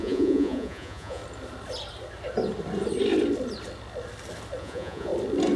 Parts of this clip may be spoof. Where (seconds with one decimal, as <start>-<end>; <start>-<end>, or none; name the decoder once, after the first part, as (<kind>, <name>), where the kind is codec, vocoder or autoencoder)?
0.0-1.2 (vocoder, Vocos); 4.6-5.1